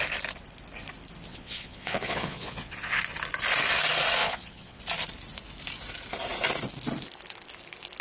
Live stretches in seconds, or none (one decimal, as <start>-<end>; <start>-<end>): 0.0-1.3; 3.0-4.2; 4.8-8.0